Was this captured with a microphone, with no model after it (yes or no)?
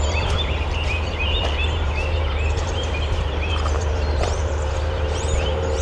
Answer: no